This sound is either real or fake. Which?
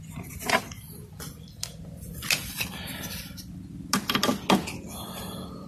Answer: real